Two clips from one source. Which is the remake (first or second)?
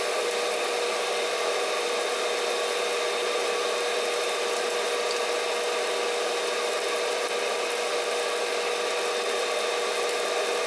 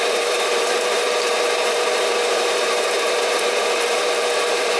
second